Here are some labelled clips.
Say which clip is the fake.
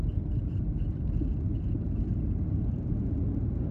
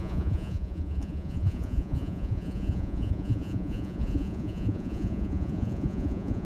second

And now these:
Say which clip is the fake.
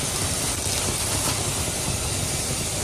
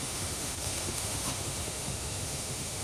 second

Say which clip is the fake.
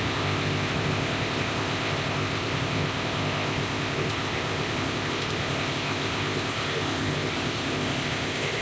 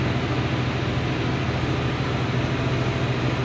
first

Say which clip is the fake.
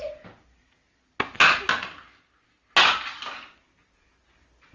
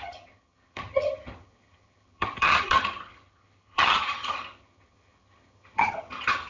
second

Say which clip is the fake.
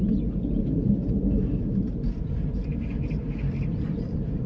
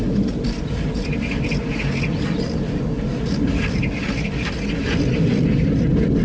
first